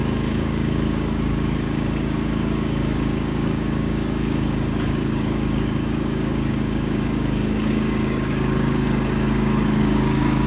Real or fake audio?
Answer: fake